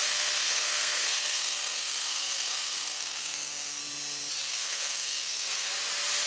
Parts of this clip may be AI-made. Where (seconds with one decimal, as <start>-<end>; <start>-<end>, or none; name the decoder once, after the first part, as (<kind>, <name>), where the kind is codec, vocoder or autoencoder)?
0.0-3.8 (codec, SNAC); 4.5-5.7